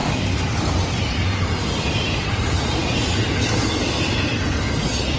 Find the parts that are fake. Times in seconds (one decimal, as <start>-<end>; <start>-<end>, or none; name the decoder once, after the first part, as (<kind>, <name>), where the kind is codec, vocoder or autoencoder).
none